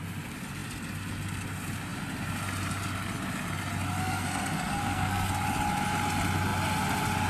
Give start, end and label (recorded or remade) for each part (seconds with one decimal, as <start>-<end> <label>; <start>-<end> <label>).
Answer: 0.0-4.0 recorded; 4.0-5.3 remade; 5.3-7.3 recorded